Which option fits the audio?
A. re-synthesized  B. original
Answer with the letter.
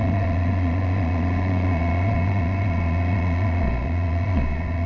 A